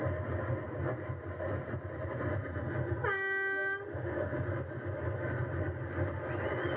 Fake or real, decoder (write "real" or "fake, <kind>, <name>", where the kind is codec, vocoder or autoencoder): real